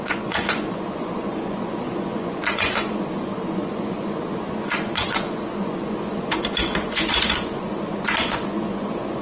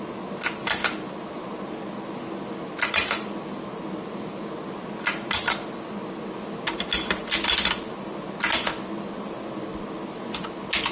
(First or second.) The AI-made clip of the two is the first